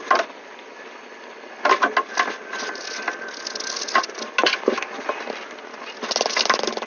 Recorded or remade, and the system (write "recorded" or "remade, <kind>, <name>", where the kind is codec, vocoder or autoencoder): recorded